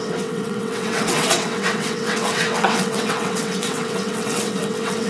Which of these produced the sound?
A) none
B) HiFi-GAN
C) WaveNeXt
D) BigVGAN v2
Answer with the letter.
C